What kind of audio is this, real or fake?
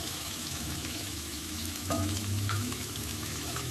fake